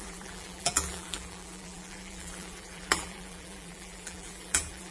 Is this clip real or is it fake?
fake